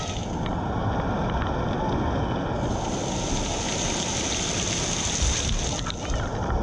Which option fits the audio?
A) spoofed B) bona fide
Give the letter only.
B